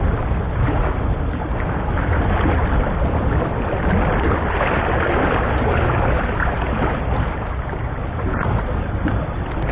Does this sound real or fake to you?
real